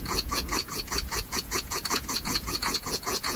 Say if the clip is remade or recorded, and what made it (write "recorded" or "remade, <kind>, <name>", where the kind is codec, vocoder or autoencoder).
remade, vocoder, Vocos